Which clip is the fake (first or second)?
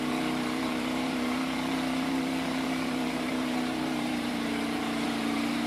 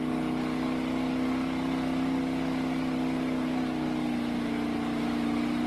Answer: first